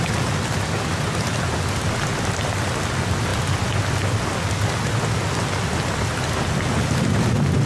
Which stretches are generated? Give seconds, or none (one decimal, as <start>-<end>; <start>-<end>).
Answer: none